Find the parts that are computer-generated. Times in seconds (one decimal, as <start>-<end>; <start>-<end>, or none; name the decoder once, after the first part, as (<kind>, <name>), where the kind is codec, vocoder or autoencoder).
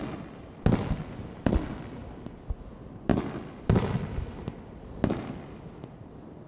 3.1-4.2 (vocoder, BigVGAN v2)